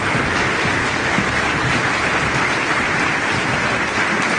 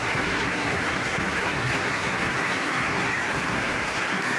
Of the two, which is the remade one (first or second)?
second